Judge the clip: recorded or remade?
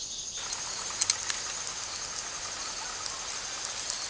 recorded